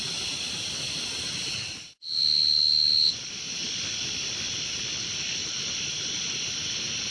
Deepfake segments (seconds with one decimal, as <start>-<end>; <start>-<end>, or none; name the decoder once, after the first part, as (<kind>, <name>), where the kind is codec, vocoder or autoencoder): 1.4-2.2 (vocoder, BigVGAN v2)